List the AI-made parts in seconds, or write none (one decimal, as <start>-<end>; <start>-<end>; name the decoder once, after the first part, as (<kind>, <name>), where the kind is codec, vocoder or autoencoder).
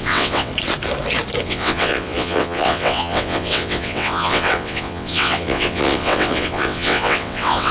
0.0-0.5 (vocoder, WaveNeXt); 1.4-7.7